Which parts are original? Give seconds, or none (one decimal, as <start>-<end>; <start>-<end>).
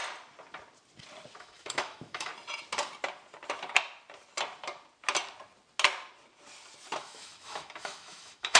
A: 0.0-1.4; 2.3-7.0